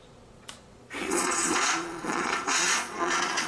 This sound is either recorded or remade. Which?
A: remade